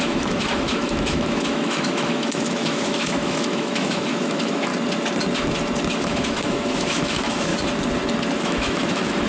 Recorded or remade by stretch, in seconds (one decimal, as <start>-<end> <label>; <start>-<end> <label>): 0.0-4.7 remade; 4.7-6.0 recorded; 6.0-7.5 remade; 7.5-8.4 recorded; 8.4-9.3 remade